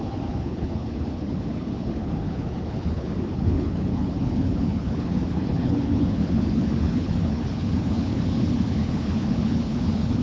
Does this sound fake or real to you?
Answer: fake